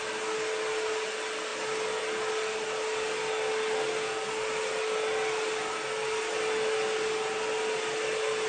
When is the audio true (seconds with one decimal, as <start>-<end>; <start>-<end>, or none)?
0.0-8.5